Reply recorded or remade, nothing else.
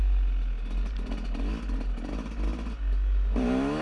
recorded